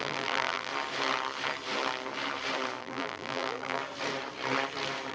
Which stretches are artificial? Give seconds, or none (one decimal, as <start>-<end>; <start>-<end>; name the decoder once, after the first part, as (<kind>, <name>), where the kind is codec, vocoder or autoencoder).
0.0-0.7 (vocoder, BigVGAN v2); 2.8-3.8